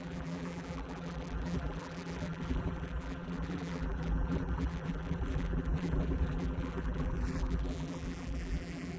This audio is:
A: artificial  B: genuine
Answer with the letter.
A